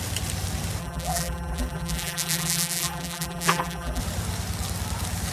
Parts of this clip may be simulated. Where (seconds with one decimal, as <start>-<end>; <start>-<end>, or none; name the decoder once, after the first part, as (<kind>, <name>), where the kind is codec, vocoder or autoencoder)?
0.8-4.0 (vocoder, BigVGAN v2)